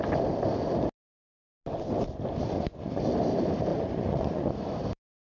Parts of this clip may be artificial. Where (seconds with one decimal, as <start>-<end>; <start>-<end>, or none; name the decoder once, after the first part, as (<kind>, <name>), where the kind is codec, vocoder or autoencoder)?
2.4-3.0 (vocoder, Vocos); 3.7-4.5